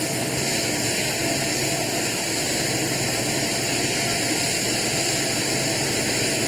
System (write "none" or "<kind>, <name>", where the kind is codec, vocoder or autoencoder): none